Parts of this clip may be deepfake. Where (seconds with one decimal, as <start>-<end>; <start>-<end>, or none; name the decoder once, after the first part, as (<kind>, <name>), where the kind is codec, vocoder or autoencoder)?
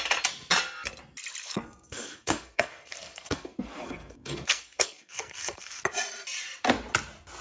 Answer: 1.4-5.8 (codec, SNAC)